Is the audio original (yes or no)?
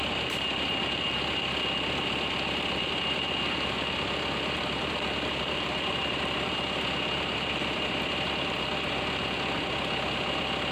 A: yes